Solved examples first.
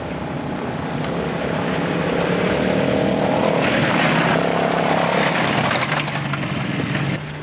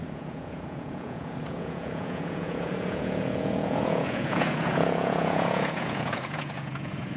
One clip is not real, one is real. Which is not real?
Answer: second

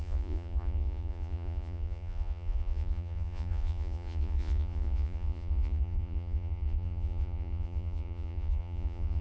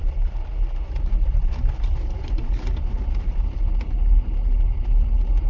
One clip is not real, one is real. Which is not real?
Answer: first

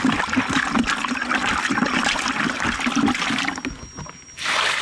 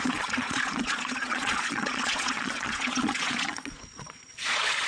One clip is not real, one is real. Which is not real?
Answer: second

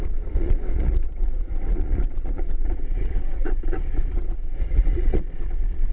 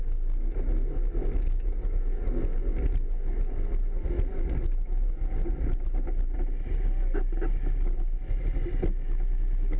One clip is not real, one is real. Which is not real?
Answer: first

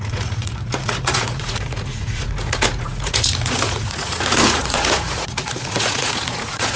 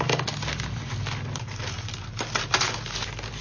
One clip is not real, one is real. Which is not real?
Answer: first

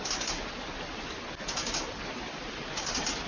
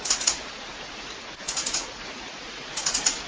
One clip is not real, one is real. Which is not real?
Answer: second